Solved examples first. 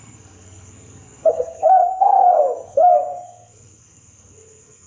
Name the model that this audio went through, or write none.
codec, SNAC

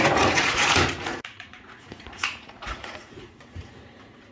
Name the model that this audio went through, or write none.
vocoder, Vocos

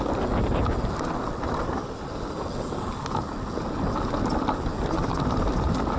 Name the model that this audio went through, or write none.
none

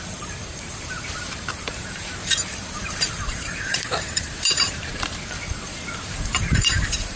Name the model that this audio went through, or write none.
vocoder, BigVGAN v2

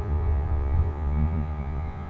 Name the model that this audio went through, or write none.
vocoder, Vocos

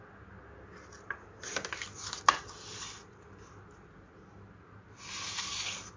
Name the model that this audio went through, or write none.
none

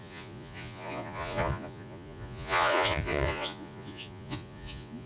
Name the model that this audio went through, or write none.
vocoder, Vocos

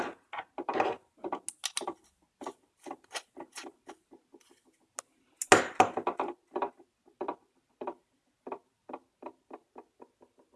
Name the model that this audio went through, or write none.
none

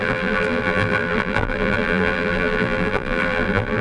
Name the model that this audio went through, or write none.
vocoder, BigVGAN v2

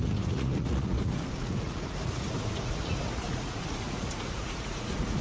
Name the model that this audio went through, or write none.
vocoder, Vocos